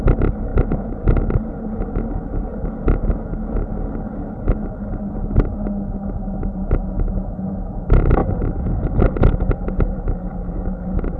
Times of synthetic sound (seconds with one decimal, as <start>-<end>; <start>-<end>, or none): none